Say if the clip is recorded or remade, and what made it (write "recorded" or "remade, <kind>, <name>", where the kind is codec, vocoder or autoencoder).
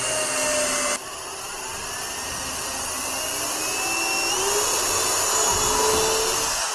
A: recorded